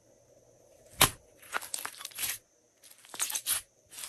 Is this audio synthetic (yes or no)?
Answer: no